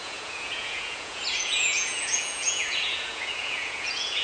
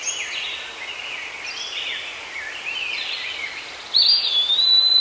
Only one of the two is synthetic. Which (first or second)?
first